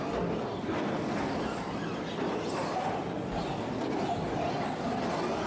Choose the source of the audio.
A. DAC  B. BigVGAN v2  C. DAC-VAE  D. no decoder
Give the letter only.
D